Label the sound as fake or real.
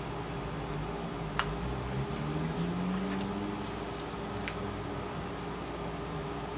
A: real